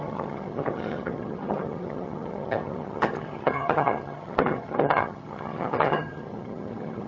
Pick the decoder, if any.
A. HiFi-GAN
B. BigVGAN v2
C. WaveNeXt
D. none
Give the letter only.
A